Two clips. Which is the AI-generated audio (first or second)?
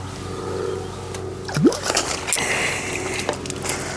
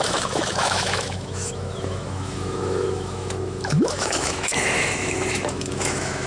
second